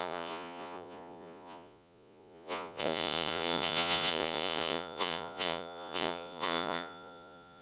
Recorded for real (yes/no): no